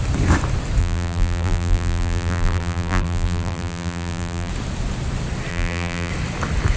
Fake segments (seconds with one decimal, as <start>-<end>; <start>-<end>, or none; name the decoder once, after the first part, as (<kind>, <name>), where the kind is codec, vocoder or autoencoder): 0.8-4.5 (vocoder, BigVGAN v2); 5.5-6.1